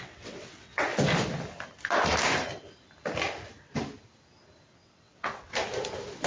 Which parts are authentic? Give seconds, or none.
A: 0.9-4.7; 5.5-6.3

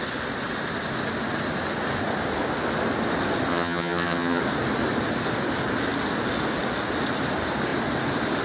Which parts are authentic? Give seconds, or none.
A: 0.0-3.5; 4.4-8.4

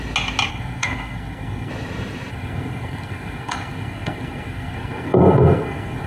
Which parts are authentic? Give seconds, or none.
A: 0.0-0.5; 1.7-2.3